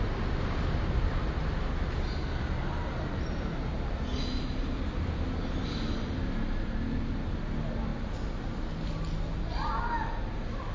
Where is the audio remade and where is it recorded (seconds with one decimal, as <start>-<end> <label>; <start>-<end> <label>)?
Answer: 0.0-10.7 recorded